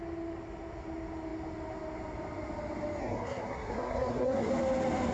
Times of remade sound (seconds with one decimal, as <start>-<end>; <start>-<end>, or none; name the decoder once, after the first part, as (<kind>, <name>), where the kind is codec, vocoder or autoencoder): 3.0-4.5 (codec, SNAC)